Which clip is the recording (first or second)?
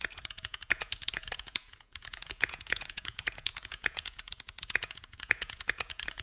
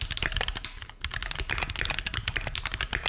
second